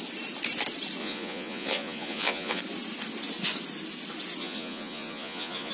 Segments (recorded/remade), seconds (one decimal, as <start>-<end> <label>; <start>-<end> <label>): 0.0-1.0 recorded; 1.0-2.6 remade; 2.6-4.4 recorded; 4.4-5.7 remade